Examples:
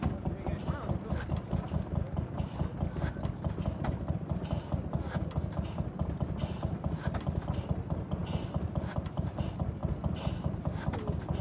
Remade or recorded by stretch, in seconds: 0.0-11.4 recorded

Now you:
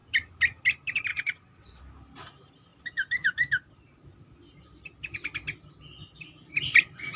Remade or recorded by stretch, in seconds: 0.0-1.1 recorded; 1.1-1.8 remade; 1.8-7.2 recorded

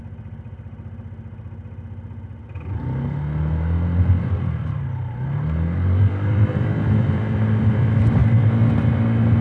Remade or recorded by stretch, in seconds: 0.0-9.4 recorded

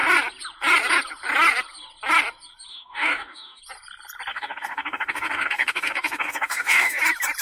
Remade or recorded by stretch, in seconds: 0.0-2.7 recorded; 2.7-3.6 remade; 3.6-4.3 recorded; 4.3-7.0 remade; 7.0-7.4 recorded

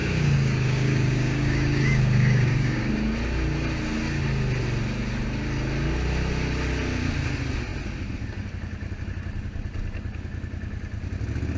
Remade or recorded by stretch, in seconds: 0.0-2.9 remade; 2.9-11.6 recorded

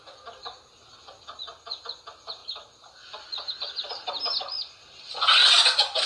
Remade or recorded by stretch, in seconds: 0.0-6.1 recorded

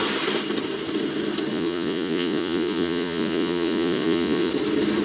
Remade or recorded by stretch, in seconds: 0.0-1.5 recorded; 1.5-4.5 remade; 4.5-5.0 recorded

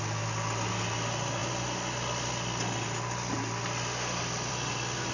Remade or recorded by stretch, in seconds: 0.0-5.1 recorded